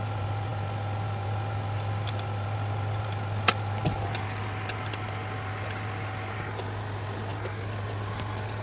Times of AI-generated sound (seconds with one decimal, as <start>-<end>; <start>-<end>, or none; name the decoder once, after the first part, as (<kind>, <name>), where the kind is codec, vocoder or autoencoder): none

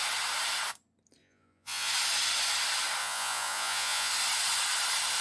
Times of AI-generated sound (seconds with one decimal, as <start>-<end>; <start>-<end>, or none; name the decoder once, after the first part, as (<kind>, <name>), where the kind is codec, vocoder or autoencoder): 1.2-1.9 (vocoder, Vocos); 3.0-4.1

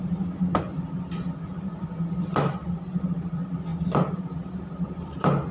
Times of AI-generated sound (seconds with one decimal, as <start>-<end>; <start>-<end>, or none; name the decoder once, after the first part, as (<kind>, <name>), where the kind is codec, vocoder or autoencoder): none

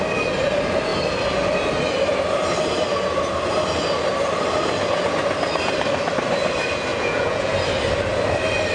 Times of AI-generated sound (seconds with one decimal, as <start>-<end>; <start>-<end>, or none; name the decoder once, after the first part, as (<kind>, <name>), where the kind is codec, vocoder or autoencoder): 6.9-7.5 (vocoder, Vocos)

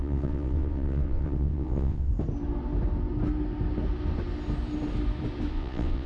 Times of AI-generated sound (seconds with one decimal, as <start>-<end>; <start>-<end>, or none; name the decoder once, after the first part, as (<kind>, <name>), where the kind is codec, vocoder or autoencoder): 0.0-2.1 (vocoder, WaveNeXt); 5.5-6.1

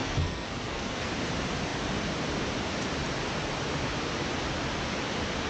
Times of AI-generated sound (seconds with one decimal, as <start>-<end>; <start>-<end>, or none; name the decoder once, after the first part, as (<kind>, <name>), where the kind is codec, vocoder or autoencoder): 0.0-1.1 (codec, SNAC)